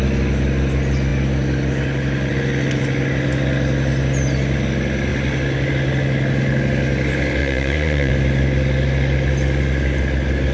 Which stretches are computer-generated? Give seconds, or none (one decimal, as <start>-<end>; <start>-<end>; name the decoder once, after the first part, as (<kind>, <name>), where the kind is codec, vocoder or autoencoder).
7.4-8.1 (vocoder, Vocos)